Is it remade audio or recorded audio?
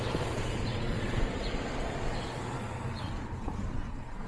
remade